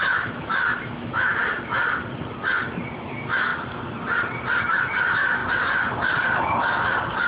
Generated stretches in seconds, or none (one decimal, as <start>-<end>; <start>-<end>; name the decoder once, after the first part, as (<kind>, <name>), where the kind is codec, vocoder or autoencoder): 0.0-1.3 (autoencoder, DAC-VAE); 3.0-3.5; 4.6-5.4